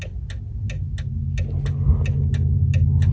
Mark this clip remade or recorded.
recorded